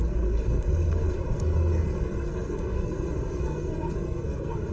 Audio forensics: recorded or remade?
remade